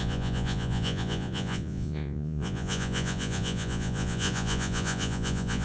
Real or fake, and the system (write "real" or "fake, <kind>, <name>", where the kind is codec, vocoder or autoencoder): fake, vocoder, Vocos